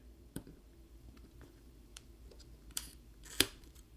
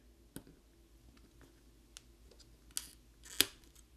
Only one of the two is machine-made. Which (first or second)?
first